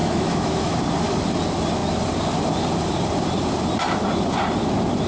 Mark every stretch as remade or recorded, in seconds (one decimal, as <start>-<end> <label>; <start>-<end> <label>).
0.0-0.7 remade; 0.7-5.1 recorded